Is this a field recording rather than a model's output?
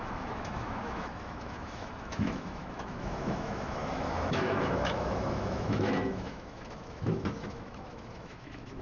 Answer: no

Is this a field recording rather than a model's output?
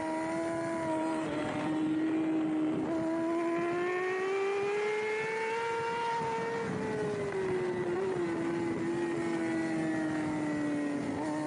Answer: yes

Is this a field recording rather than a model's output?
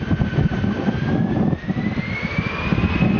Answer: yes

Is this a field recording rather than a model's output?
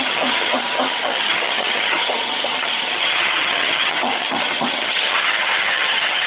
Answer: no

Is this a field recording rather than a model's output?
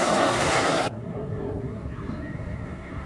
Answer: no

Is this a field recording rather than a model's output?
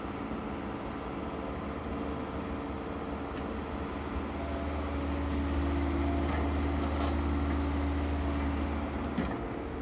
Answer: yes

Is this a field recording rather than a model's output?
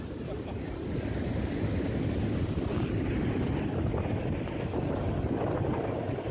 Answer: yes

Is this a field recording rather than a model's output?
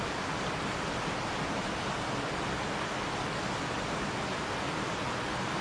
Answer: yes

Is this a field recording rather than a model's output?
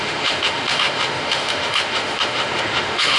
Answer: no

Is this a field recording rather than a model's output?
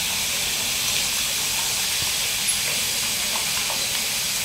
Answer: yes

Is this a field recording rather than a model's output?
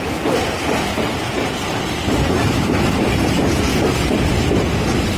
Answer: yes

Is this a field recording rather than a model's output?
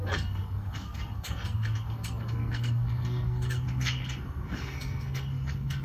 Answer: no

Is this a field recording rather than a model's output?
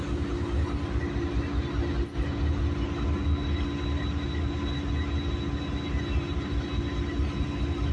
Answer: yes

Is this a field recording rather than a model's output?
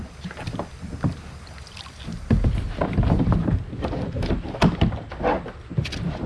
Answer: yes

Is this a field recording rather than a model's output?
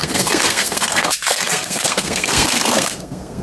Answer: no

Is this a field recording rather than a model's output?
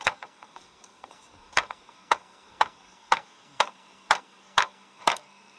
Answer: no